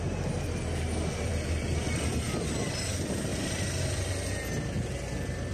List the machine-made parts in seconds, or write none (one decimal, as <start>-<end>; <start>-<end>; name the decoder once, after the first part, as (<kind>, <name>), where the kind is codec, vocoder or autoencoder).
none